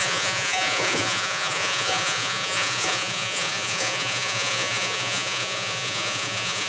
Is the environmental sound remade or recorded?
remade